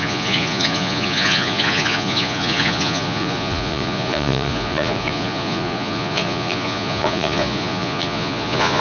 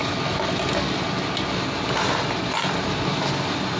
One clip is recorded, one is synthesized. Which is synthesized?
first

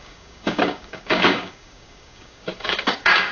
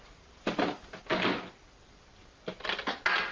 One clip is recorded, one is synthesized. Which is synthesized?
first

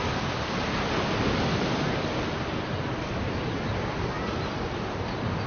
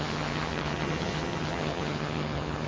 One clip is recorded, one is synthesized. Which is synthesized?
second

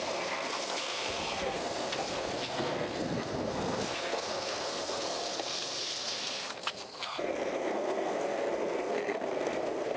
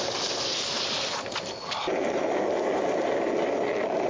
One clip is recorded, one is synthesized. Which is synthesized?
first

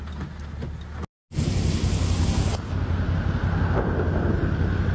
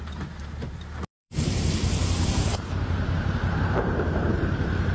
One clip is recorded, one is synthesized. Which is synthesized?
second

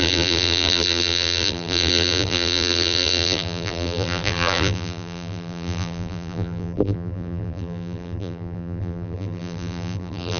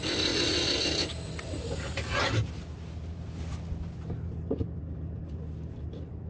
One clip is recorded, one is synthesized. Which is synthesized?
first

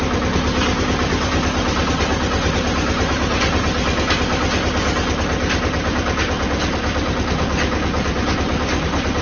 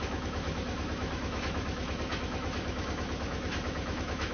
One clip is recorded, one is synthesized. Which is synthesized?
second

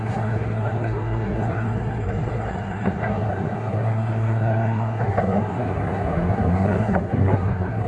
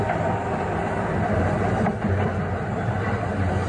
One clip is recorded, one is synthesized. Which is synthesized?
first